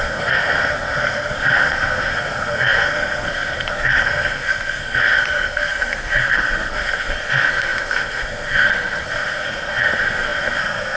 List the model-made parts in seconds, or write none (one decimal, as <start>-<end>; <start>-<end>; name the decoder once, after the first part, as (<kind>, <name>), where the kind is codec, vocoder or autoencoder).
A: 0.0-11.0 (codec, SNAC)